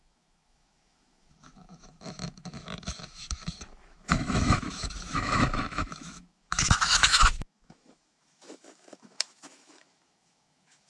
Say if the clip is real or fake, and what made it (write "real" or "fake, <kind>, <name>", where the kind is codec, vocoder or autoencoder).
fake, autoencoder, DAC-VAE